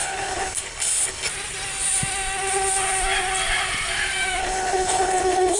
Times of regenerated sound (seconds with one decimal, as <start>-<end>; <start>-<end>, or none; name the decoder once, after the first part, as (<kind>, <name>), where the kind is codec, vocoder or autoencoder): 0.0-1.3 (codec, HILCodec); 4.4-5.6